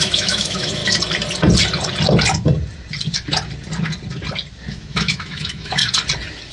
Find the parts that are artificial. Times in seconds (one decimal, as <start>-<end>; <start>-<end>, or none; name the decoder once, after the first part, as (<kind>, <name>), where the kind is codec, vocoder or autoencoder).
0.0-0.8 (autoencoder, DAC-VAE); 4.7-5.8